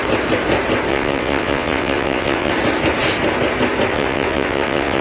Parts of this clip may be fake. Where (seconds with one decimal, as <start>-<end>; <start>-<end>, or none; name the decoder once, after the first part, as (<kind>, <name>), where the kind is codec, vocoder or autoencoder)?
0.9-2.5 (vocoder, WaveNeXt); 3.9-5.0